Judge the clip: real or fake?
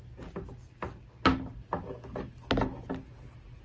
real